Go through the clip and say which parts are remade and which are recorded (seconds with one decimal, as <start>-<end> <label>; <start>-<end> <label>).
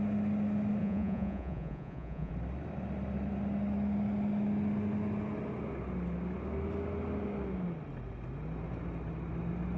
0.0-0.8 recorded; 0.8-2.3 remade; 2.3-9.8 recorded